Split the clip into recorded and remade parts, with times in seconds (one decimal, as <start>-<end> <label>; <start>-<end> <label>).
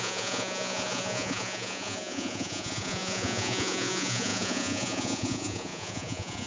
0.0-6.5 remade